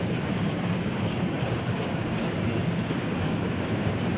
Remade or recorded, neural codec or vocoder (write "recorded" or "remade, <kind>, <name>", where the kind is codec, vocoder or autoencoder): remade, codec, DAC